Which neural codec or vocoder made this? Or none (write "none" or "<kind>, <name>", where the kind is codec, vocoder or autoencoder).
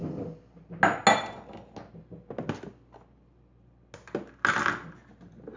none